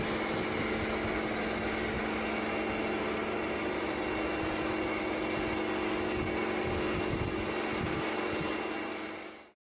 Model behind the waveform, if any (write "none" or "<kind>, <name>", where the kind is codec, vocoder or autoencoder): none